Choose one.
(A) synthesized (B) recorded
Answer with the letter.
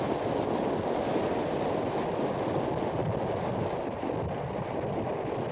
B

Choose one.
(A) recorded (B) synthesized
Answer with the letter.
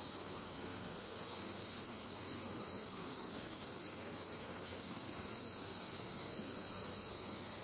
B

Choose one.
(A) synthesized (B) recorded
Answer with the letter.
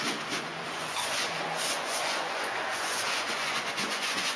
A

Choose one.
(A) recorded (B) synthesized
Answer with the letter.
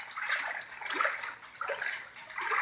A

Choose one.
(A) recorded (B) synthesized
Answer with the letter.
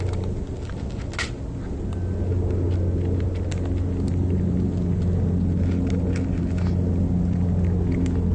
A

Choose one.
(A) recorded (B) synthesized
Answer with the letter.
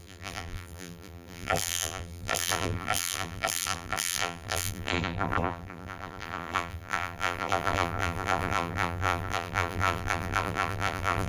B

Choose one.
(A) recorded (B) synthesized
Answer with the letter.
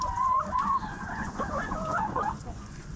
B